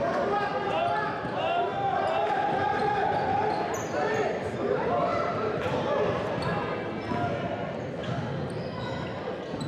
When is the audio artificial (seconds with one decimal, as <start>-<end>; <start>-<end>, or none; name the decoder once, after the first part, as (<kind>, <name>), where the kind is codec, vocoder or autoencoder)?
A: 5.1-6.3 (vocoder, BigVGAN v2)